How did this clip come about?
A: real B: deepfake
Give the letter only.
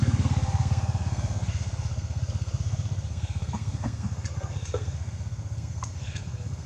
B